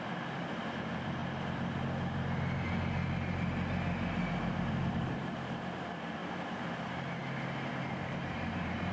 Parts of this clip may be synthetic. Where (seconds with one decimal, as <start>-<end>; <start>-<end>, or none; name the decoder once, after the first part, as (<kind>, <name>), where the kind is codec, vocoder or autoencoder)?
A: 0.0-1.2 (vocoder, BigVGAN v2); 4.9-7.2; 7.7-8.9